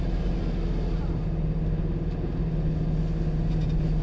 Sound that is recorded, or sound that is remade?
recorded